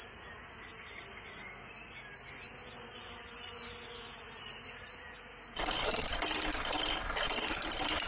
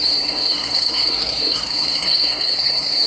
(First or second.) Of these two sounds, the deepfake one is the second